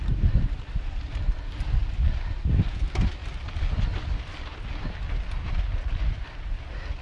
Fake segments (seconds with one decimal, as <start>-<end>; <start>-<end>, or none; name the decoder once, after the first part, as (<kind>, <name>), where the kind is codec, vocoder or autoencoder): 1.8-2.4 (vocoder, BigVGAN v2)